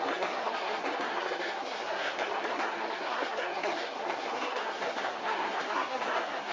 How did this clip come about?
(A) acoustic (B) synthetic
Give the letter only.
B